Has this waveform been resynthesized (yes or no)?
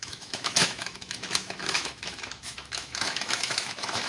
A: yes